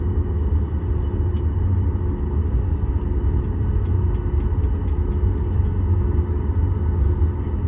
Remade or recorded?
recorded